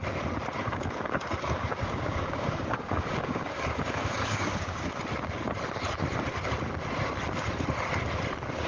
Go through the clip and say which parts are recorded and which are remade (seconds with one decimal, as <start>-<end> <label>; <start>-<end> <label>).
0.0-0.6 recorded; 0.6-4.9 remade; 4.9-8.7 recorded